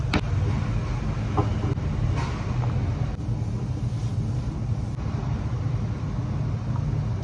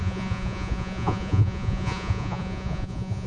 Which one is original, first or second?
first